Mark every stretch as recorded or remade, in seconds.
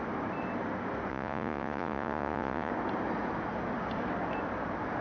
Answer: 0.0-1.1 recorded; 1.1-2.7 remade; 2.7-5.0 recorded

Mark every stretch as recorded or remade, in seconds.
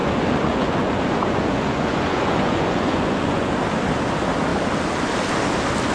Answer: 0.0-3.5 remade; 3.5-5.9 recorded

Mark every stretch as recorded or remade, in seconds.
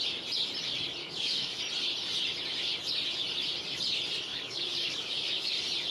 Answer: 0.0-1.0 recorded; 1.0-1.6 remade; 1.6-4.3 recorded; 4.3-5.5 remade; 5.5-5.9 recorded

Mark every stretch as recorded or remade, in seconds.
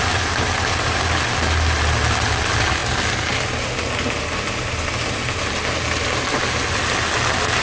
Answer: 0.0-7.6 recorded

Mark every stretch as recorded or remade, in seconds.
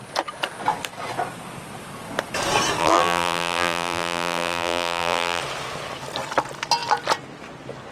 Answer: 0.0-2.8 recorded; 2.8-5.4 remade; 5.4-7.9 recorded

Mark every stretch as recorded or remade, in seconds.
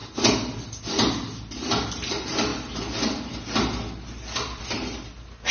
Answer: 0.0-5.5 recorded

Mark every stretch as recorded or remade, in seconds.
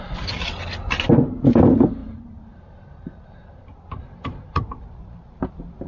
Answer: 0.0-2.0 recorded; 2.0-5.5 remade; 5.5-5.9 recorded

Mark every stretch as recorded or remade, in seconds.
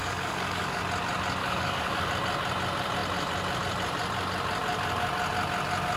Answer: 0.0-0.8 remade; 0.8-1.4 recorded; 1.4-2.1 remade; 2.1-6.0 recorded